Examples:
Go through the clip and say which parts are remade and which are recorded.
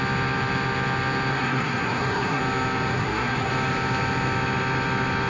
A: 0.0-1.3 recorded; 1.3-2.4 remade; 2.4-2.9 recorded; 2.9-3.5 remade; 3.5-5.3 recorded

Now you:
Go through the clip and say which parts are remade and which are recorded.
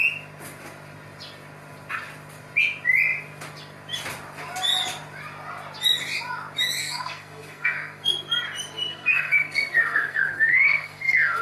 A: 0.0-6.8 recorded; 6.8-8.1 remade; 8.1-8.9 recorded; 8.9-11.4 remade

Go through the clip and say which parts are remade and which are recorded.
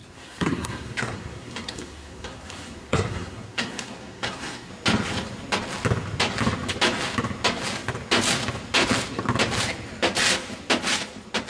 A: 0.0-4.7 remade; 4.7-11.5 recorded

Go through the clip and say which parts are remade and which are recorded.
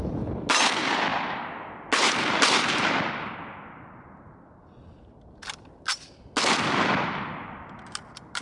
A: 0.0-8.4 recorded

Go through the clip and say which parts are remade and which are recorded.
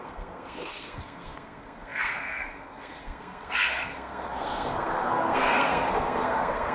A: 0.0-6.7 remade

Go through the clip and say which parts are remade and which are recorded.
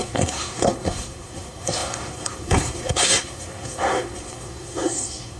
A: 0.0-5.4 remade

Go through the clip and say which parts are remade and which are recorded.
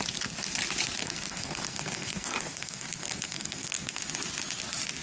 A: 0.0-1.0 recorded; 1.0-4.0 remade; 4.0-5.0 recorded